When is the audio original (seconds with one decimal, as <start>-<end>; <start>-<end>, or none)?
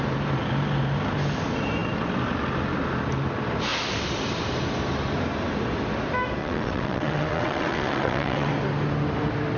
0.0-6.4; 8.5-9.6